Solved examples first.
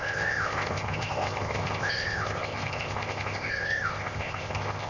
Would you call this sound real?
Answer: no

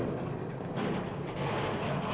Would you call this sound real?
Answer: yes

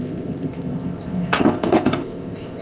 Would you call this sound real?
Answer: no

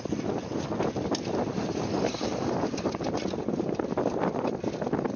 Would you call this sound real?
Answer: yes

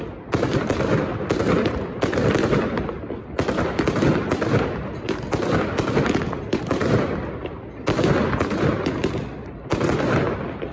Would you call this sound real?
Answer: yes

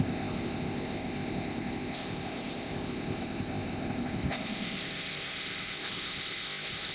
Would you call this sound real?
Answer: no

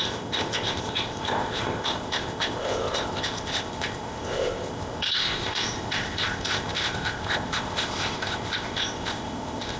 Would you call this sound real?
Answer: no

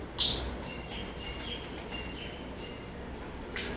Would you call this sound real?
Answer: yes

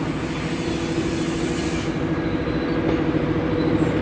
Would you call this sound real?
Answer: yes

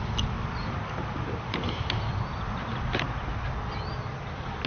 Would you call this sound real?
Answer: yes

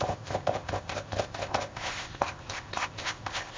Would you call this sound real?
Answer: no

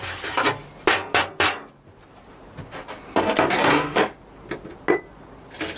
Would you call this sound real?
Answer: yes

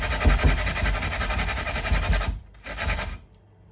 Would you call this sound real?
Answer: yes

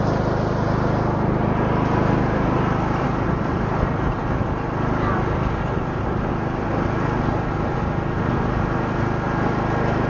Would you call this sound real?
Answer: yes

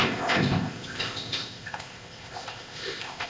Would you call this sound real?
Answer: no